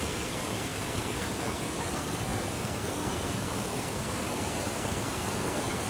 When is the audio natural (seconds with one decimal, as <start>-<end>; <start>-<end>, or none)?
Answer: none